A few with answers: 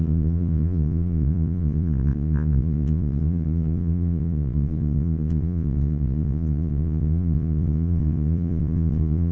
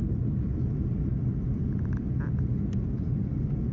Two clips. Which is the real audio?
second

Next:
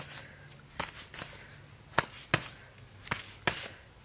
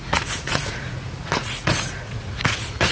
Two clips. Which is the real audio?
first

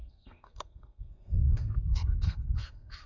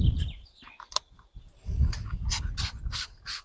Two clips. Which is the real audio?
second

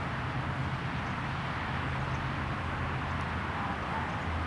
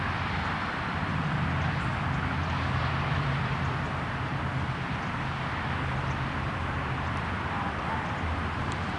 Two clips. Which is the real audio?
first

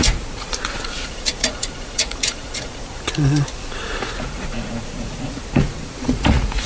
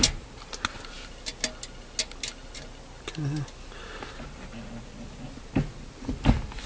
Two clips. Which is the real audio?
second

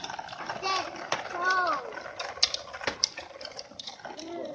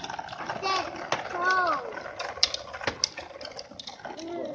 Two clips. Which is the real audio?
second